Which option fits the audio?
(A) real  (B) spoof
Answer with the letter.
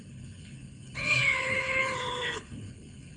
B